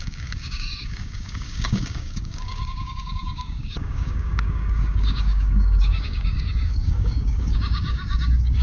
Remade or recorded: remade